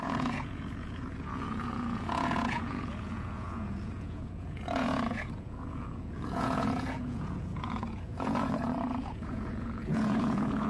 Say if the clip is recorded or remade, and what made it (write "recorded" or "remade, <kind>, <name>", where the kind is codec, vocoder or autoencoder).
remade, vocoder, Vocos